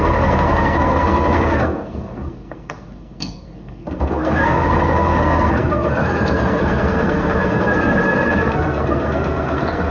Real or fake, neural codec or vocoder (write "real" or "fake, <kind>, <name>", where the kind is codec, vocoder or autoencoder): fake, codec, SNAC